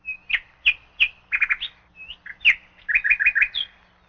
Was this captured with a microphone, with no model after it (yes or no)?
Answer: yes